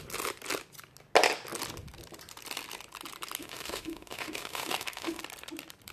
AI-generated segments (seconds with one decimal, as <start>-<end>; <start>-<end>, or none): 3.4-5.2